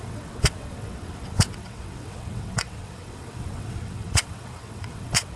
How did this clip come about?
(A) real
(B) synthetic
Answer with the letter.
B